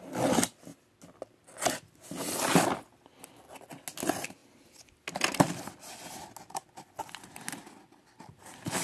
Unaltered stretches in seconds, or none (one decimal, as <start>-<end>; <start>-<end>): 0.0-8.8